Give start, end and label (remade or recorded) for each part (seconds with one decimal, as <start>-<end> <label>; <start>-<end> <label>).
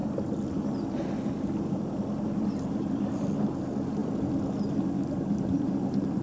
0.0-6.2 recorded